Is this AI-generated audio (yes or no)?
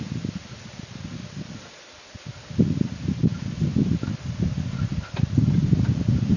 no